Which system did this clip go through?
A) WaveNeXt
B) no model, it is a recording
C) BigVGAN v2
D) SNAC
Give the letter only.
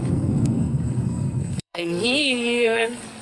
D